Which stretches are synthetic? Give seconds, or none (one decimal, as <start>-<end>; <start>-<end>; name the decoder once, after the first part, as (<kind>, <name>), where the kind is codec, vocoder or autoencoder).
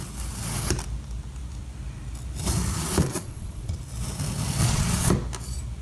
2.8-3.8 (vocoder, Vocos); 4.6-5.1